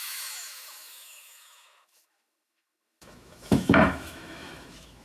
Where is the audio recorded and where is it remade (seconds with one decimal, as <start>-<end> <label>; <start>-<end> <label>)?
0.0-5.0 remade